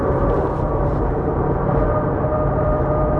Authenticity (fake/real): fake